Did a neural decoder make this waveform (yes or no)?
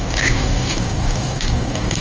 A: yes